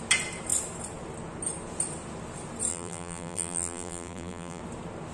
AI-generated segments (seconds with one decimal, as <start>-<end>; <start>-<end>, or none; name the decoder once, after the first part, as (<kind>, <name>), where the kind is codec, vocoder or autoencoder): 2.7-4.6 (vocoder, BigVGAN v2)